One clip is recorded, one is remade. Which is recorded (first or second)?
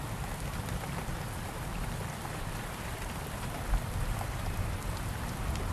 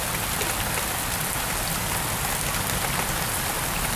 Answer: second